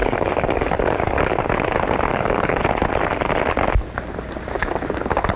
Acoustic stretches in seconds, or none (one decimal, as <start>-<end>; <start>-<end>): 1.2-2.1; 2.6-5.4

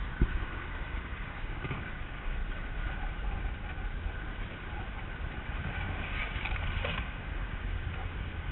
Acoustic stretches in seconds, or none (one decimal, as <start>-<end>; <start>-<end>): 2.4-5.7; 6.2-7.0

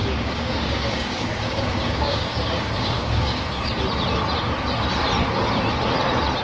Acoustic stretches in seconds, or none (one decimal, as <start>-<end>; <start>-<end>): 3.8-6.4